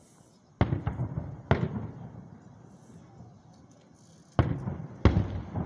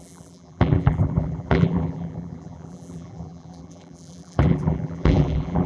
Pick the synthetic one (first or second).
second